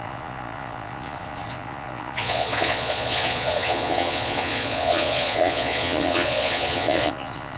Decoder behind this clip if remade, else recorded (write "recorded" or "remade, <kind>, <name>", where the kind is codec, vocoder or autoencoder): remade, vocoder, Vocos